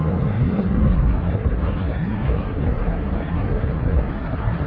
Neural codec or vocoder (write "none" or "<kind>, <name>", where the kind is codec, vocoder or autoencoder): codec, SNAC